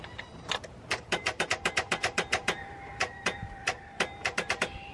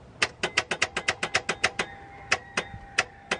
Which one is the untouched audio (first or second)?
second